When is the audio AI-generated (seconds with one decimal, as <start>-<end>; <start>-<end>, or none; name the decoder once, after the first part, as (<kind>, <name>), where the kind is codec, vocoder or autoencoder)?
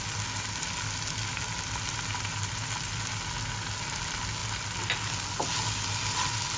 none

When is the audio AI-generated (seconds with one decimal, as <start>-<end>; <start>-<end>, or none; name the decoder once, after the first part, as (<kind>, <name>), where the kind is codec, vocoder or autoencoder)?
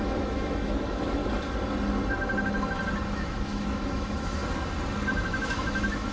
0.0-1.2 (autoencoder, DAC-VAE); 3.0-4.4; 5.1-6.1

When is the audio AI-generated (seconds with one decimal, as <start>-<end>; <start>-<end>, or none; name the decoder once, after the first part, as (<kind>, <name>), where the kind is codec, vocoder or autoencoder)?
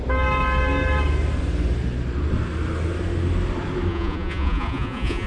3.9-5.3 (vocoder, Vocos)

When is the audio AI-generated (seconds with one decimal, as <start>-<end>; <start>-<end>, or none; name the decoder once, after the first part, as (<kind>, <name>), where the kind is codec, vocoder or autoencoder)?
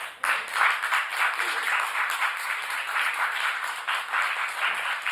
1.1-3.8 (vocoder, BigVGAN v2)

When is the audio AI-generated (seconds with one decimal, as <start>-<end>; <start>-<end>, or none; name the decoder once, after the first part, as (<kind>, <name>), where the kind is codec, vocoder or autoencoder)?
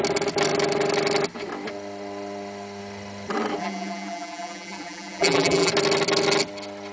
3.6-5.7 (vocoder, BigVGAN v2)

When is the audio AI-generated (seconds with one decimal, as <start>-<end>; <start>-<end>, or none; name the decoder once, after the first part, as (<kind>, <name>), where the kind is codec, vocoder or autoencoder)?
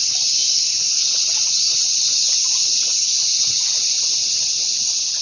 1.0-3.1 (vocoder, WaveNeXt)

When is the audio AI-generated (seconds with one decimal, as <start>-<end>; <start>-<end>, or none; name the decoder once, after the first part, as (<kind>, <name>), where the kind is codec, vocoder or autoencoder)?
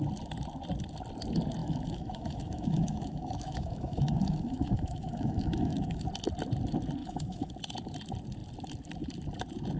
1.6-6.1 (autoencoder, DAC-VAE); 7.0-7.5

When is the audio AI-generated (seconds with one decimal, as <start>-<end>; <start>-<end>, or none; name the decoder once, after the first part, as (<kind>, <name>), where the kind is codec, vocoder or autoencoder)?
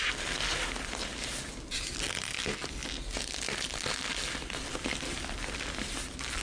none